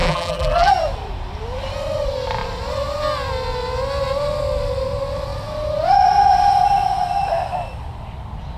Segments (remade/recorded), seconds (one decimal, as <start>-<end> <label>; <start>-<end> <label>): 0.0-0.7 remade; 0.7-8.6 recorded